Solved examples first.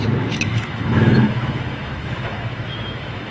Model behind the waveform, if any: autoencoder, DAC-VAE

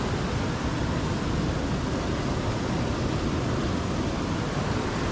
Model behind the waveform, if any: none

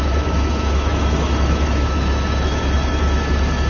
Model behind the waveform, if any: autoencoder, DAC-VAE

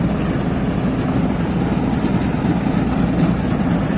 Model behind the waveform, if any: none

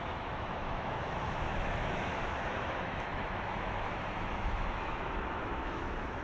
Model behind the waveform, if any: autoencoder, DAC-VAE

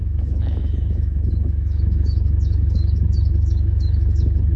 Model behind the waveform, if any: autoencoder, DAC-VAE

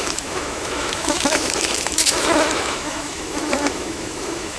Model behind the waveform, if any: autoencoder, DAC-VAE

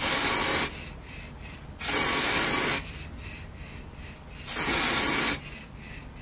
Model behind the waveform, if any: none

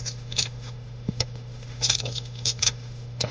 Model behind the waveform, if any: autoencoder, DAC-VAE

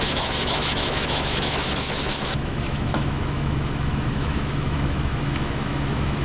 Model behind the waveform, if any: autoencoder, DAC-VAE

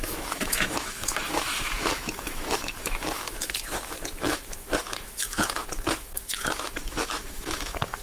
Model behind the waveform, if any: autoencoder, DAC-VAE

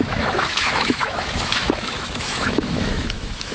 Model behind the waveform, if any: autoencoder, DAC-VAE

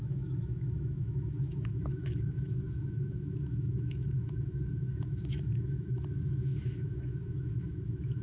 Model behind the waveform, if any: autoencoder, DAC-VAE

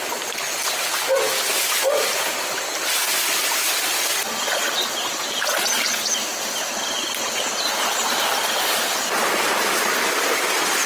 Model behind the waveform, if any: none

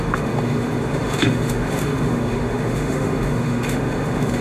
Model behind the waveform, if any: autoencoder, DAC-VAE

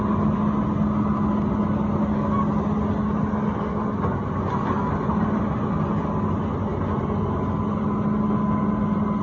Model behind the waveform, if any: none